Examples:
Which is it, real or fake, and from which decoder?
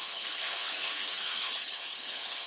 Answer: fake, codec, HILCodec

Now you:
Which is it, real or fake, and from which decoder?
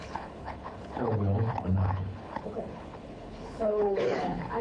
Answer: fake, codec, HILCodec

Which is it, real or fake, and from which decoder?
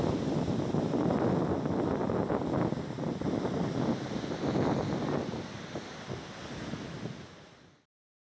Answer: real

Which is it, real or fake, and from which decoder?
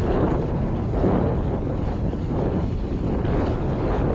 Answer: fake, codec, HILCodec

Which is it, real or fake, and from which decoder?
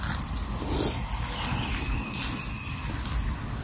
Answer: real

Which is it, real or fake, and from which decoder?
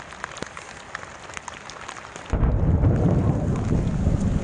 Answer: real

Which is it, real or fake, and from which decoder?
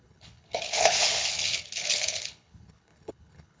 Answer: fake, codec, HILCodec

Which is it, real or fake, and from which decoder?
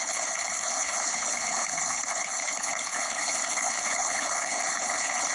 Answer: fake, codec, HILCodec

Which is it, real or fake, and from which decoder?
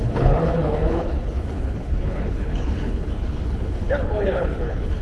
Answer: fake, codec, HILCodec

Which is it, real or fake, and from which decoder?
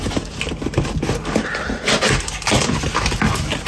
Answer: real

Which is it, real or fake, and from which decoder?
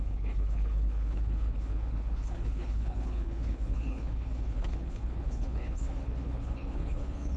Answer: fake, codec, HILCodec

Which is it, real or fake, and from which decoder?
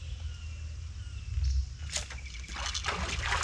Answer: real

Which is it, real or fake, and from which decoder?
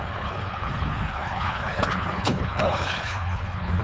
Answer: fake, codec, HILCodec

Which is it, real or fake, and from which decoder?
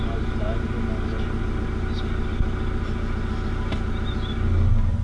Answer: real